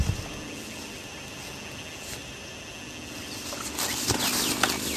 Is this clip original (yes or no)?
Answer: yes